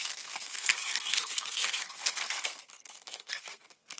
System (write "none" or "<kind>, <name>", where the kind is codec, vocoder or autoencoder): codec, SNAC